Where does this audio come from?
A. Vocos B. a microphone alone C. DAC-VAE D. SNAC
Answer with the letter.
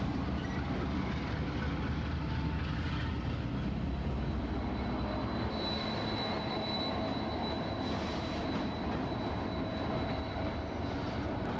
B